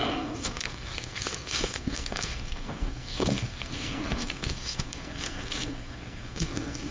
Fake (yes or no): yes